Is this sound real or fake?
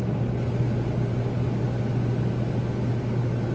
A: real